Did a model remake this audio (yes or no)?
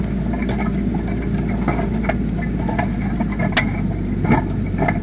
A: no